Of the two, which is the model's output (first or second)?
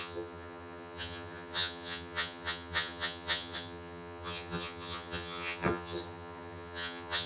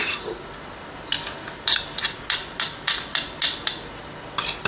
first